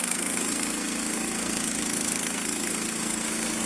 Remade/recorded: remade